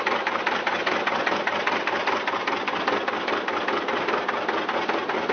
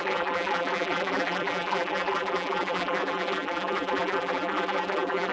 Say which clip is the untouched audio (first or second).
first